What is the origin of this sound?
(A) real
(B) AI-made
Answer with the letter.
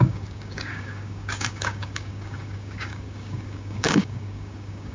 B